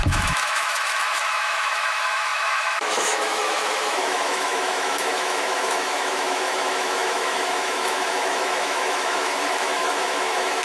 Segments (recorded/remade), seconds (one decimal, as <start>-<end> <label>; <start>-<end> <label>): 0.0-10.6 remade